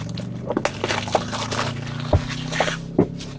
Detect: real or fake real